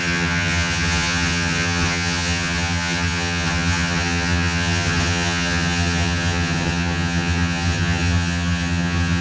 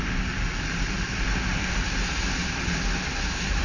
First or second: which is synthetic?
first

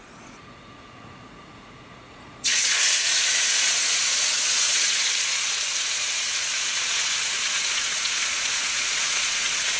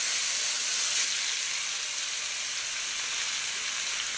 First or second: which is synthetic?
first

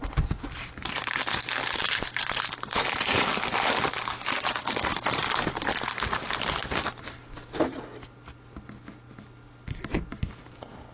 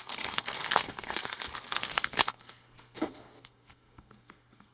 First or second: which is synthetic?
second